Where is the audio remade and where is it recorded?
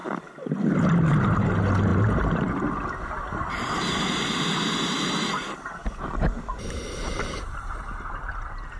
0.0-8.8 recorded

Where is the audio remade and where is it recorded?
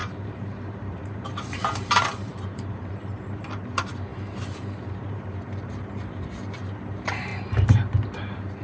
0.0-7.3 remade; 7.3-8.2 recorded; 8.2-8.6 remade